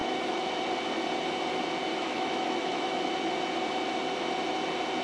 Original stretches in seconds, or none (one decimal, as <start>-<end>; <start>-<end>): 0.5-1.9; 3.1-5.0